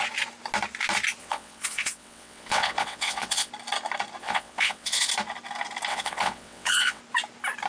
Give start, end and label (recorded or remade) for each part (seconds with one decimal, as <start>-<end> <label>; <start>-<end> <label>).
0.0-1.2 recorded; 1.2-3.5 remade; 3.5-4.2 recorded; 4.2-5.1 remade; 5.1-5.9 recorded; 5.9-7.0 remade; 7.0-7.7 recorded